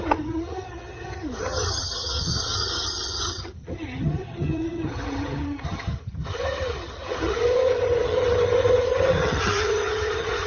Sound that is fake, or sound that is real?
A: fake